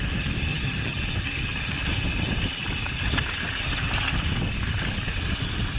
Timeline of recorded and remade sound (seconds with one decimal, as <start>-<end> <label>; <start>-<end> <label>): 0.0-0.5 recorded; 0.5-1.0 remade; 1.0-5.8 recorded